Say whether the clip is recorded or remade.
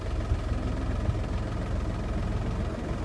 recorded